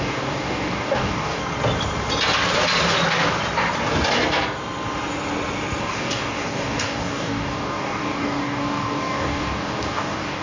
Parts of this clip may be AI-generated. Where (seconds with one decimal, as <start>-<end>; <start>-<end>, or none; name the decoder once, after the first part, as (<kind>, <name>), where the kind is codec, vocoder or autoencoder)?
0.0-1.4 (codec, DAC); 5.8-10.4